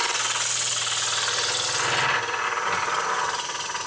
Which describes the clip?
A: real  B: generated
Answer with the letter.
A